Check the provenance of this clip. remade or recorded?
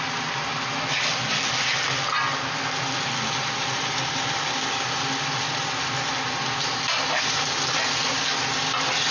recorded